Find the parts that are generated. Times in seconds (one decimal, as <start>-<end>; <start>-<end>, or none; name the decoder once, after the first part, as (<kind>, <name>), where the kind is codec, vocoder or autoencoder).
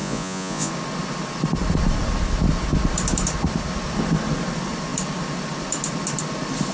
0.0-0.7 (vocoder, Vocos)